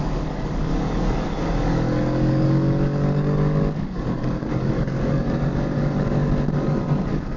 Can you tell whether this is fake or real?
fake